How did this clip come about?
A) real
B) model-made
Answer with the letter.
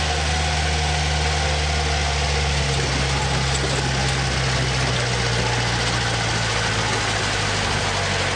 A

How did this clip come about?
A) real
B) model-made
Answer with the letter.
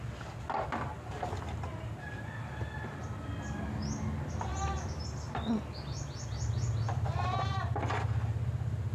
A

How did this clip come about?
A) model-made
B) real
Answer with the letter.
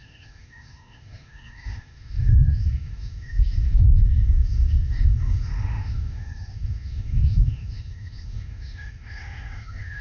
A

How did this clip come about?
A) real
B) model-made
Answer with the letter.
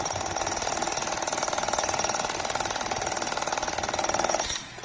A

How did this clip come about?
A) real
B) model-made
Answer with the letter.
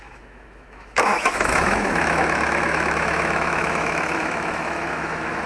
B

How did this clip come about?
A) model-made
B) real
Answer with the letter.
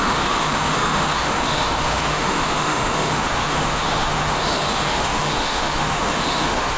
A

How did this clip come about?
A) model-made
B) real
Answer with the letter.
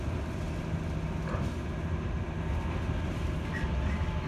B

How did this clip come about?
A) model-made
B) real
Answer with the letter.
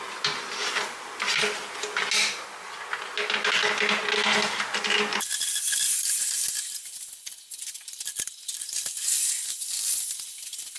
B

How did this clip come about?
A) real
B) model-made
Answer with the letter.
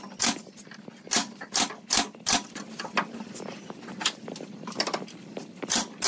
A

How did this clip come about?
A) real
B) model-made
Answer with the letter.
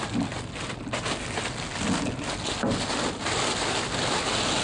A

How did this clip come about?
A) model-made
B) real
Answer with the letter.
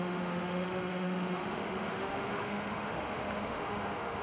A